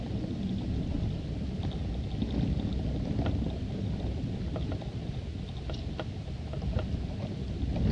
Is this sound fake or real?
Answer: real